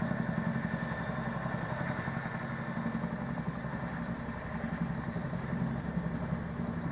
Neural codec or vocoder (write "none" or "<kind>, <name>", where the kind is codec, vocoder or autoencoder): none